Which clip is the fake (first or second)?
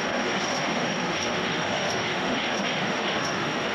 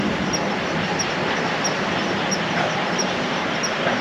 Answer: first